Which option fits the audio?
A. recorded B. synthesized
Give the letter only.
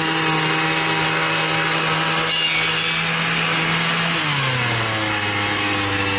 A